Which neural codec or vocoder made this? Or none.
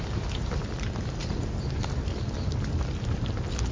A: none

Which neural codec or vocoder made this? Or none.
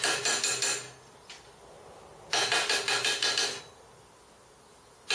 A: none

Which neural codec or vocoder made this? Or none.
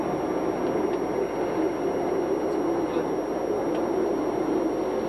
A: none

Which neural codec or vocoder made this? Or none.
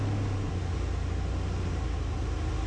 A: none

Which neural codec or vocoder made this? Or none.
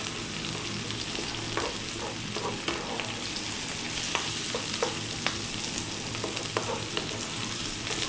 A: none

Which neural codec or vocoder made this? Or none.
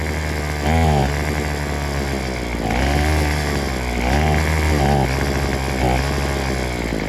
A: none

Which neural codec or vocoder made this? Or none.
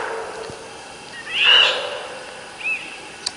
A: none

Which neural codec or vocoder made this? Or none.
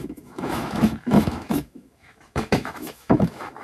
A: autoencoder, DAC-VAE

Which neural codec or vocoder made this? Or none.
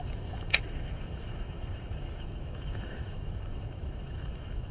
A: autoencoder, DAC-VAE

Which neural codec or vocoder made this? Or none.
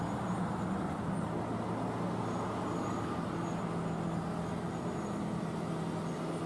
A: none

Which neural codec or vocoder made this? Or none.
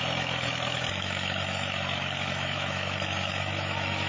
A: autoencoder, DAC-VAE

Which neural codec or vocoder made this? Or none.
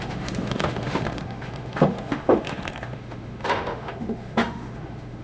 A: autoencoder, DAC-VAE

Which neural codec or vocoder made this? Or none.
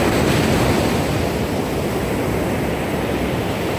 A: none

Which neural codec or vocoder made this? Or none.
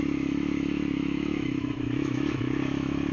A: autoencoder, DAC-VAE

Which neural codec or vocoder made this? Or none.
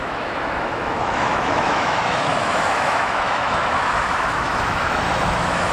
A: autoencoder, DAC-VAE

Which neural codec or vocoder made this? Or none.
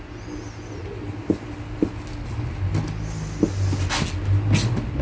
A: none